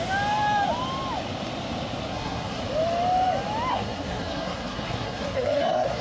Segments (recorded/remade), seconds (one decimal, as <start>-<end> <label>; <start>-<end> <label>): 0.0-2.1 recorded; 2.1-2.6 remade; 2.6-3.7 recorded; 3.7-6.0 remade